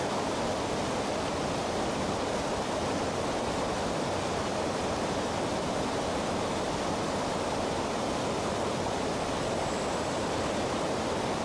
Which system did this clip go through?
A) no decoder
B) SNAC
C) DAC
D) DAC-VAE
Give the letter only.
A